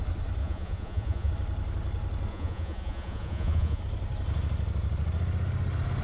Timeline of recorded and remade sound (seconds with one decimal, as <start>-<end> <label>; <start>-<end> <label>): 0.0-0.4 recorded; 0.4-1.3 remade; 1.3-2.3 recorded; 2.3-3.8 remade; 3.8-6.0 recorded